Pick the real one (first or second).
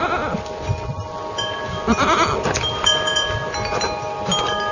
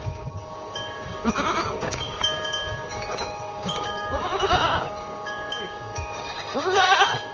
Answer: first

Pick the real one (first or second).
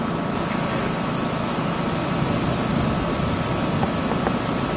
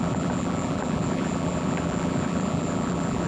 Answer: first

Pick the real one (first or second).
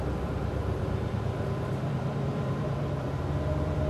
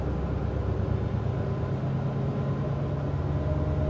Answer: second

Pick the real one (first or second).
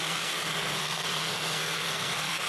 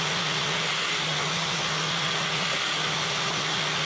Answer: second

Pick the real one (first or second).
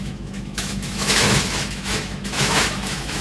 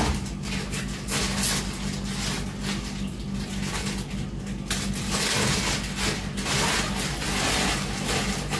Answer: second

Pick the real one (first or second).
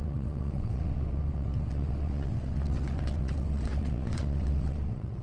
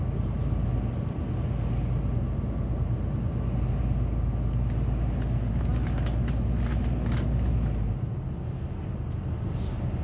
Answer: second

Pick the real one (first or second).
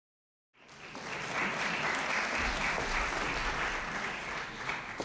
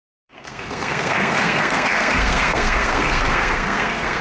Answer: first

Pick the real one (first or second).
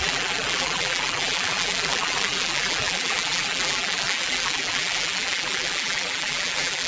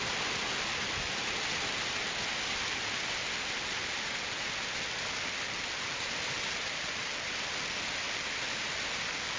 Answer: second